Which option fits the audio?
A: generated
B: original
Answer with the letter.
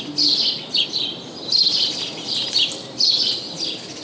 B